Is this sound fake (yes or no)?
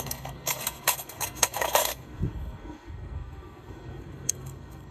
yes